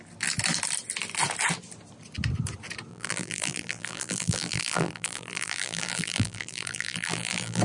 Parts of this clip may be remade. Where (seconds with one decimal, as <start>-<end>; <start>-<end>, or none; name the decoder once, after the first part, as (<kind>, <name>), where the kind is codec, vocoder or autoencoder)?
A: 2.9-7.6 (vocoder, BigVGAN v2)